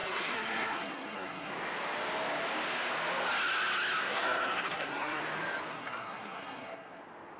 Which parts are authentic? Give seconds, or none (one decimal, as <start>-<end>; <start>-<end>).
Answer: 1.5-4.0; 5.2-5.7; 7.0-7.4